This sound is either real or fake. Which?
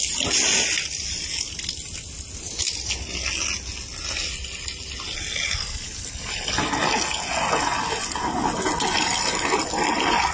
real